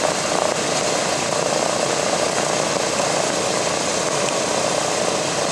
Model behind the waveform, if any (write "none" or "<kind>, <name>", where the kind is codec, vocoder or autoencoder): none